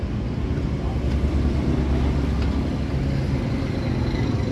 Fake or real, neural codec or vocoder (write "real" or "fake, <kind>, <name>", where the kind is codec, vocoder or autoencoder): real